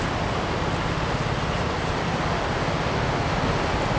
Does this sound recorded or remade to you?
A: recorded